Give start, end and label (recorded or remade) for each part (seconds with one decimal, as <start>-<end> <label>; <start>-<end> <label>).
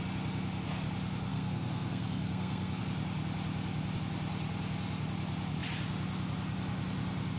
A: 0.0-1.3 recorded; 1.3-2.8 remade; 2.8-7.4 recorded